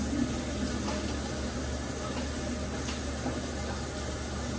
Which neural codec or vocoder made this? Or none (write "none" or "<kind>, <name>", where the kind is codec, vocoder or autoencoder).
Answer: none